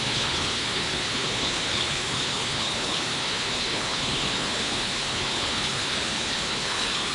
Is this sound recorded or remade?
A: remade